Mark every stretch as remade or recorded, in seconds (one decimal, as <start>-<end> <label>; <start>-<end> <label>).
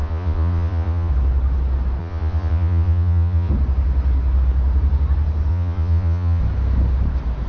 0.0-1.1 remade; 1.1-2.0 recorded; 2.0-3.5 remade; 3.5-5.5 recorded; 5.5-6.4 remade; 6.4-7.5 recorded